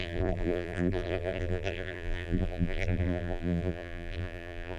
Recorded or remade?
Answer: remade